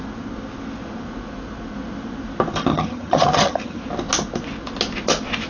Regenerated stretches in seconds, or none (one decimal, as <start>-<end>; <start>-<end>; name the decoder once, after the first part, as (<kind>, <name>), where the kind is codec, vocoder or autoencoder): 2.7-3.8 (vocoder, HiFi-GAN)